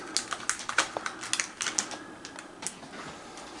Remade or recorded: recorded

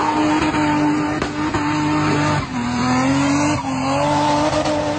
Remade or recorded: recorded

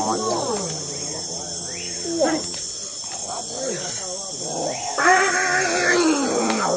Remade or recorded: recorded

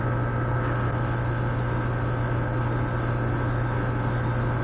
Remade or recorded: recorded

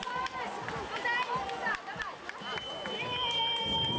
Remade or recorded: recorded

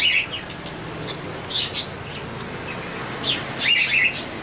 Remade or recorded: recorded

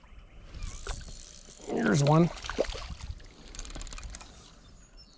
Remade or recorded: recorded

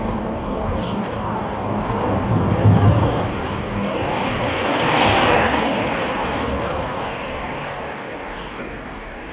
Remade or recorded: remade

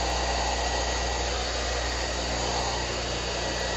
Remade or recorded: recorded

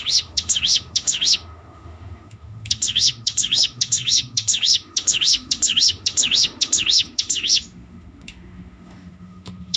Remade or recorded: remade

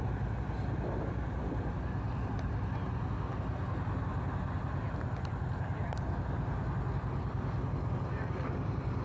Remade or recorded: recorded